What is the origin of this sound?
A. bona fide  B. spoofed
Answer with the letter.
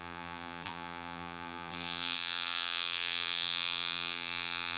B